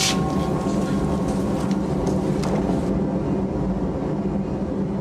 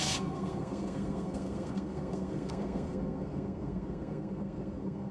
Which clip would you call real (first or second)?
first